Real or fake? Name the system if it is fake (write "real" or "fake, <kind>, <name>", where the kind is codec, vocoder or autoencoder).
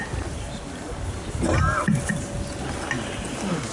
real